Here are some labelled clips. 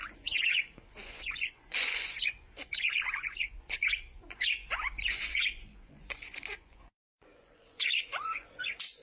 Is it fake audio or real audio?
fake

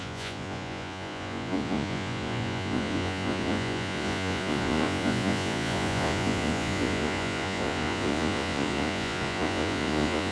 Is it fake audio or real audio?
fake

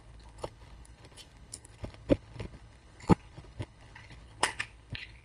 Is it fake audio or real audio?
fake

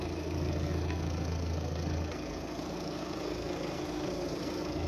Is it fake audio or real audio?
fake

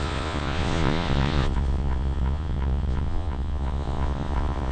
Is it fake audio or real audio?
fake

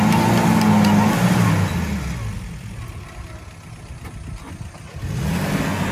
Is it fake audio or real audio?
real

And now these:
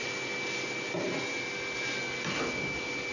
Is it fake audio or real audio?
real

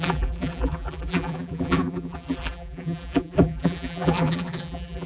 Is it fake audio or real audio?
fake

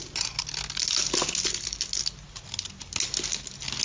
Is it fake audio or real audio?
real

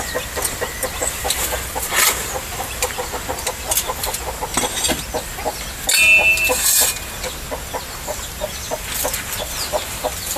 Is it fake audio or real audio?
real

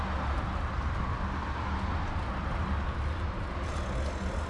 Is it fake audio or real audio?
real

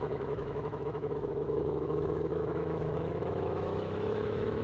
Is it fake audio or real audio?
fake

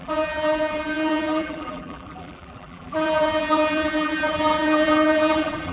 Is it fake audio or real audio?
fake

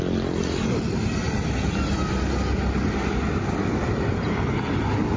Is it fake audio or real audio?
real